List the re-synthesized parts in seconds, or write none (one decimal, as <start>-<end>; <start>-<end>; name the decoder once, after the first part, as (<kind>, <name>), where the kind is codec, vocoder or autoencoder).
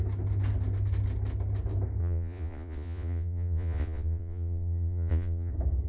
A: 2.0-5.5 (vocoder, Vocos)